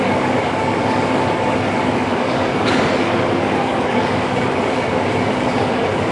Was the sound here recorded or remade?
remade